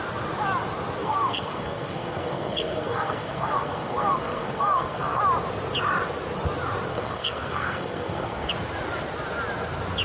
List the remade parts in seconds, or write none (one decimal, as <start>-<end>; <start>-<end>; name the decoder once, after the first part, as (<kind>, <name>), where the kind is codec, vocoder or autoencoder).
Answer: 1.0-5.2 (codec, SNAC); 6.9-8.5